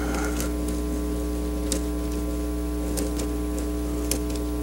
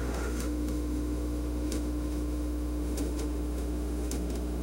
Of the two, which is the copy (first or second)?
second